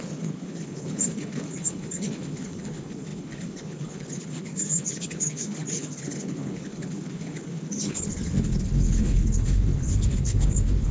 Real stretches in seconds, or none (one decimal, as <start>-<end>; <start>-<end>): none